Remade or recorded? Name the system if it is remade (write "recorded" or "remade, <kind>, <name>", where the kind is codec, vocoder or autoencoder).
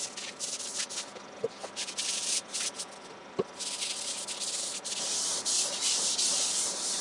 recorded